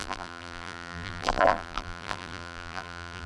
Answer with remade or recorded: remade